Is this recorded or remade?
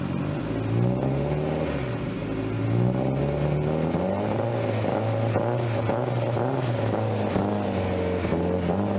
recorded